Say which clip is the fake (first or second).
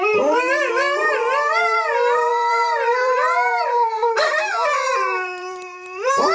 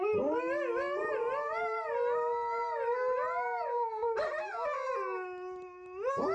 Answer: first